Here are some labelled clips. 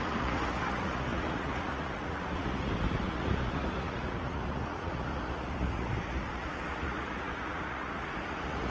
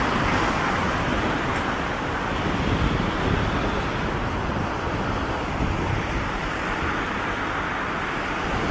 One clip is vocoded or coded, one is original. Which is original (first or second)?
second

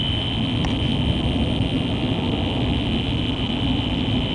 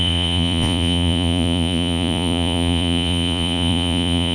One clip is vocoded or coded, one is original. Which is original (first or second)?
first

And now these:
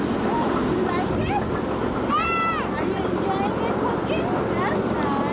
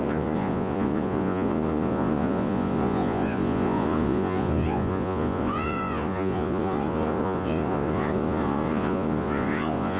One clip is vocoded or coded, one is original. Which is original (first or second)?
first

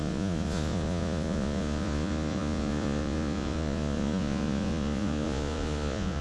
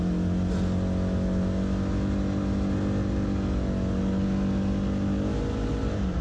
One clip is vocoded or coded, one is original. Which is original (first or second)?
second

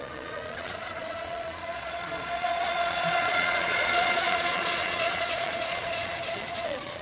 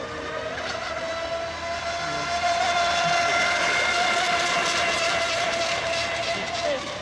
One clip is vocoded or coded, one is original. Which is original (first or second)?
second